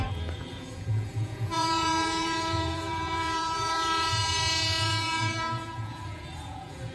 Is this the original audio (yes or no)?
no